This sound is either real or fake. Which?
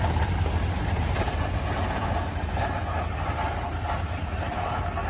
real